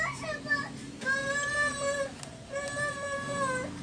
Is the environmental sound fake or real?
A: real